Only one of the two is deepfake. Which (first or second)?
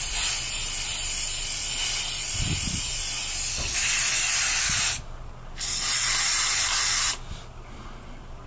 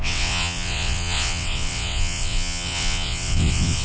second